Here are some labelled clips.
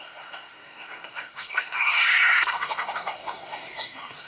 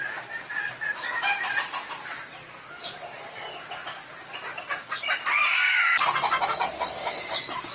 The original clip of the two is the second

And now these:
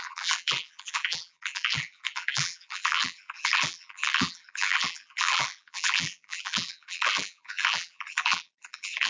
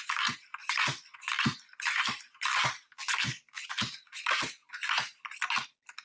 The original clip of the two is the second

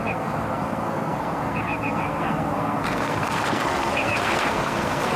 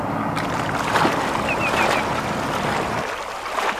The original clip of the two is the second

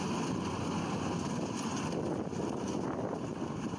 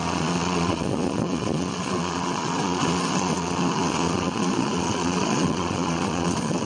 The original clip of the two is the first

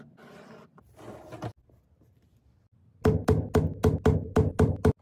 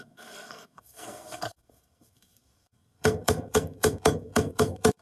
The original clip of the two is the first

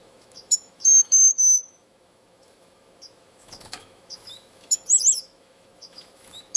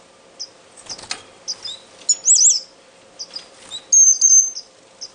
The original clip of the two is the second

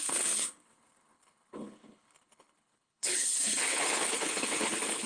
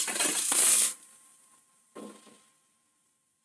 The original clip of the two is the second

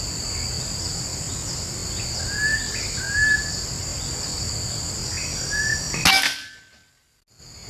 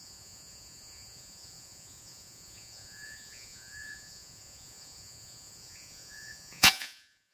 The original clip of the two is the first